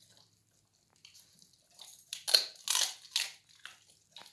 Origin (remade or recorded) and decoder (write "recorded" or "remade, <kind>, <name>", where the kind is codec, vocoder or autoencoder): recorded